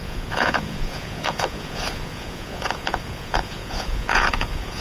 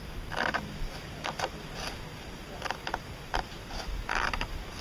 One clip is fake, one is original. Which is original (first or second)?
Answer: second